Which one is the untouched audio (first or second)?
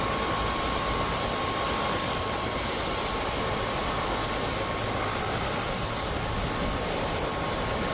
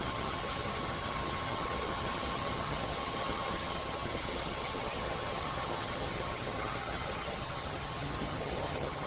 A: first